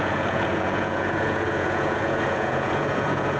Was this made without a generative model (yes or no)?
no